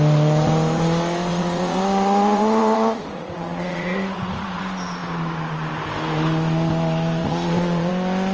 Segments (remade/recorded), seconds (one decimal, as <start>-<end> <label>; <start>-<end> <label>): 0.0-1.3 recorded; 1.3-4.6 remade; 4.6-7.2 recorded; 7.2-7.9 remade; 7.9-8.3 recorded